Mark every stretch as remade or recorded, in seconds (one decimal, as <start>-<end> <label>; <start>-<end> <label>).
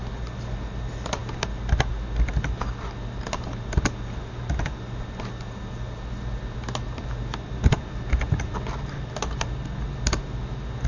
0.0-10.9 recorded